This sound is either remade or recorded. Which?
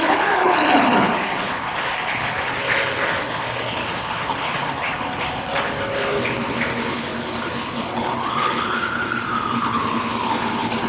remade